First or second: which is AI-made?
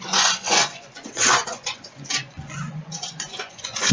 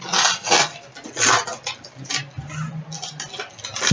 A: first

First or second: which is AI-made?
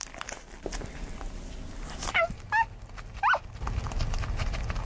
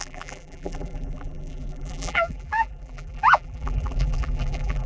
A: second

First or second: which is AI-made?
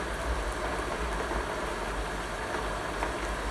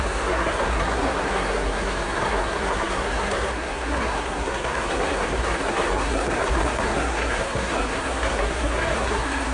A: second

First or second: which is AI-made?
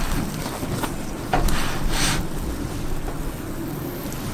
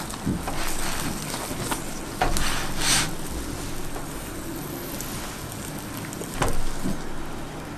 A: first